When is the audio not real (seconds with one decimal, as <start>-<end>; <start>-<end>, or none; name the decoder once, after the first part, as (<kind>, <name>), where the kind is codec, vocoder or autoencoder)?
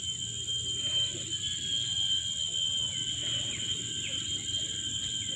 1.1-1.7 (vocoder, BigVGAN v2); 3.2-3.9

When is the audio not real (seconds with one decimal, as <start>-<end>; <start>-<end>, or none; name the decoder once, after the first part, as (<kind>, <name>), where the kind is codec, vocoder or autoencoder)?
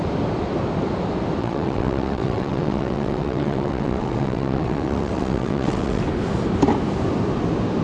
1.4-6.0 (vocoder, WaveNeXt)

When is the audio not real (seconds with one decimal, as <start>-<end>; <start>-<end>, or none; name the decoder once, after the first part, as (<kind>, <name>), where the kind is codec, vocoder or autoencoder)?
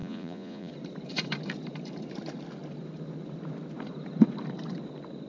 0.0-0.7 (vocoder, Vocos)